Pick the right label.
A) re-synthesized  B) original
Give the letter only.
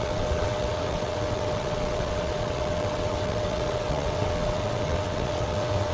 A